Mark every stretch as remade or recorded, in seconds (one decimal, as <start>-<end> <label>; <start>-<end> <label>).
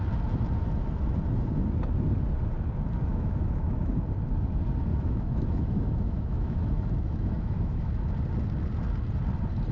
0.0-3.1 recorded; 3.1-3.9 remade; 3.9-4.9 recorded; 4.9-7.9 remade; 7.9-9.7 recorded